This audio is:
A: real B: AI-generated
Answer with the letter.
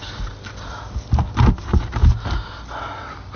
A